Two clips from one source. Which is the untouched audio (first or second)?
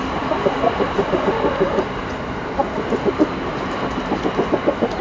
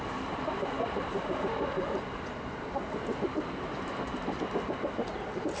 first